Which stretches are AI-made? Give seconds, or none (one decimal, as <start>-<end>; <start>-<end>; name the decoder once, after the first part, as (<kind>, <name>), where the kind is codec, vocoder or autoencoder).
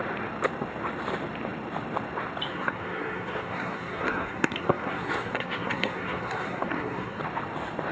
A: 2.5-7.2 (codec, SNAC)